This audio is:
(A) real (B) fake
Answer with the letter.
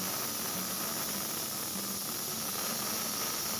A